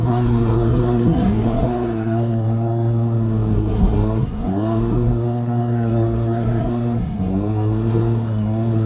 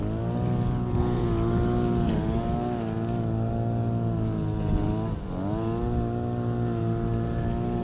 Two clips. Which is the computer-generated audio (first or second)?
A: first